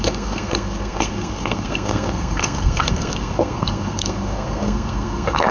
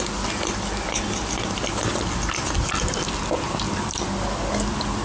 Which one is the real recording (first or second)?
second